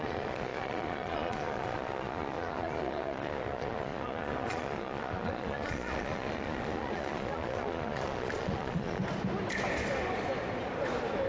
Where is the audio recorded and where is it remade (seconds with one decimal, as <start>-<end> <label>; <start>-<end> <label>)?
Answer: 0.0-9.0 remade; 9.0-11.3 recorded